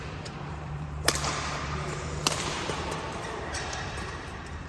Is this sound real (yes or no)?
no